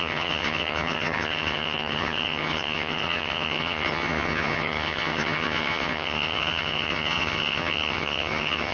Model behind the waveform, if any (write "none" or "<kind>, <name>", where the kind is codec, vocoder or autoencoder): vocoder, HiFi-GAN